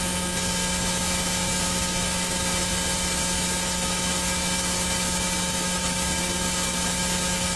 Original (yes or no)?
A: no